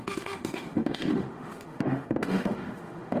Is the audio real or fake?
fake